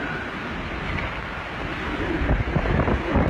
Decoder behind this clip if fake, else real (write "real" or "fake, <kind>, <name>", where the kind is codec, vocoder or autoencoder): real